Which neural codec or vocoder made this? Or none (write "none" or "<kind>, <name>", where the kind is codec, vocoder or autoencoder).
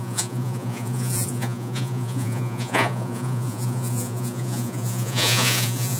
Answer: vocoder, Vocos